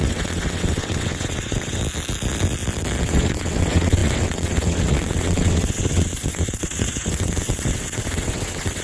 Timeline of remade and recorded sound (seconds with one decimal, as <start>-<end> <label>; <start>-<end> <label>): 0.0-1.8 remade; 1.8-3.0 recorded; 3.0-8.8 remade